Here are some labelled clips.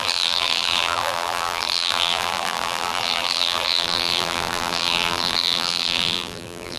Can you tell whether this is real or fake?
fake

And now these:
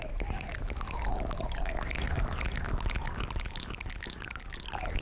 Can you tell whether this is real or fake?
real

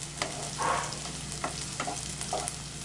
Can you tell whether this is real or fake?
real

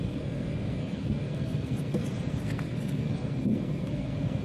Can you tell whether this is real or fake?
fake